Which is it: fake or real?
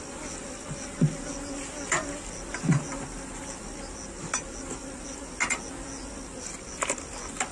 real